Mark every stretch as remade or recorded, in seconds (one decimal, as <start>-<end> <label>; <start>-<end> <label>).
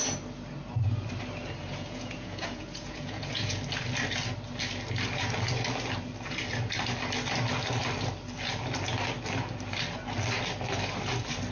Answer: 0.0-1.6 recorded; 1.6-3.6 remade; 3.6-11.5 recorded